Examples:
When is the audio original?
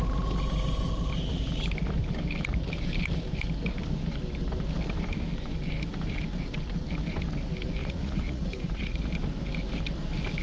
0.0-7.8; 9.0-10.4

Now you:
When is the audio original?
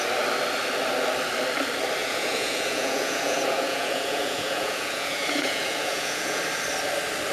0.0-2.0; 6.4-7.3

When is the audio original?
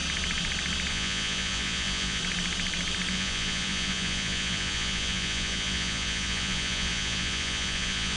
0.0-0.9; 2.2-3.1